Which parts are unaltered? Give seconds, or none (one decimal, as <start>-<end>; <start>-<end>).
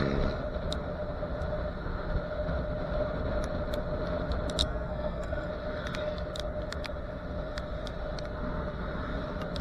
0.0-4.6; 5.5-9.6